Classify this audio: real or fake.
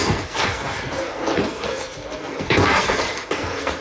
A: fake